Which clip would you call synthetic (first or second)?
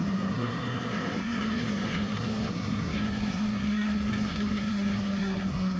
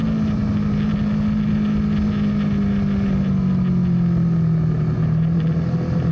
first